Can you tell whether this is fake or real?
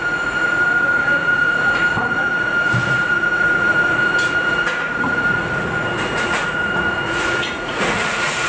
fake